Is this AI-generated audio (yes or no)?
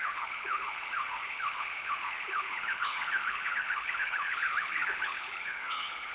yes